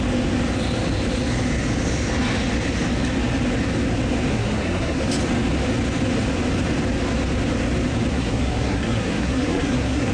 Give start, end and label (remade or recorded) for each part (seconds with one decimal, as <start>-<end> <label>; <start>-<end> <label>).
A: 0.0-4.3 recorded; 4.3-5.0 remade; 5.0-8.1 recorded; 8.1-10.1 remade